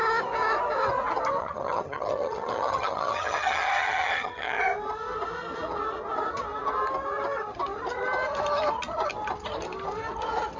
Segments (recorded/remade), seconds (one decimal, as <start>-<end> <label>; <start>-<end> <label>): 0.0-1.4 recorded; 1.4-4.6 remade; 4.6-10.6 recorded